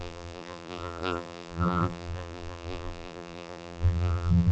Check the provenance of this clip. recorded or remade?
remade